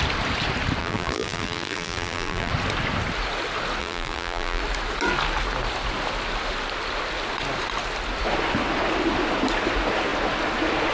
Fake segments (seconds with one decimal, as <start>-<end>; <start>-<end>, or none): 0.8-2.5; 3.8-4.6